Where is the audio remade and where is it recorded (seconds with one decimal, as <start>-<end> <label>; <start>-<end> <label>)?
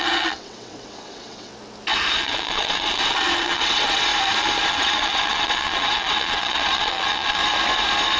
0.0-1.5 remade; 1.5-2.2 recorded; 2.2-4.1 remade; 4.1-4.7 recorded; 4.7-7.4 remade; 7.4-8.2 recorded